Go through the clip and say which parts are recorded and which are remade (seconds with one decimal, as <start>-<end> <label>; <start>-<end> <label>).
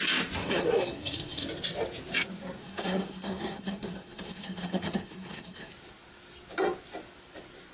0.0-0.4 recorded; 0.4-1.5 remade; 1.5-2.6 recorded; 2.6-5.7 remade; 5.7-7.7 recorded